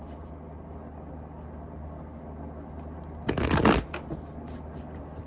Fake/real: real